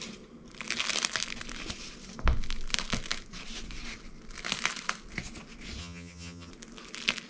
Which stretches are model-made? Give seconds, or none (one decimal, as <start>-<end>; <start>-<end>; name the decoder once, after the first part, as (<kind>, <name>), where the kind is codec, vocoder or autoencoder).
5.8-6.5 (vocoder, HiFi-GAN)